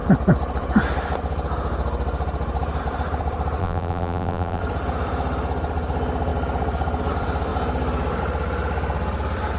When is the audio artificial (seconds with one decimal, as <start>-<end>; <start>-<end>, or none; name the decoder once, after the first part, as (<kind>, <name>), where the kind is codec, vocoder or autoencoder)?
3.6-4.6 (vocoder, BigVGAN v2)